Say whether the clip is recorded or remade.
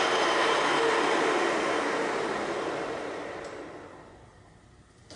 recorded